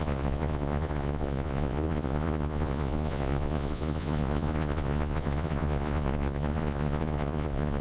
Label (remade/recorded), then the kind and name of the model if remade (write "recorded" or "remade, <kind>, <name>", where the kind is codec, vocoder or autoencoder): remade, vocoder, Vocos